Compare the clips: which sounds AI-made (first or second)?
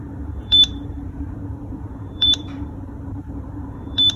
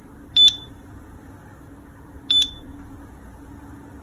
first